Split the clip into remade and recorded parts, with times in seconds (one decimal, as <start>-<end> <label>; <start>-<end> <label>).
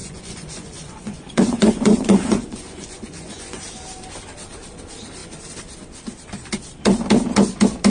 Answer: 0.0-3.6 remade; 3.6-7.9 recorded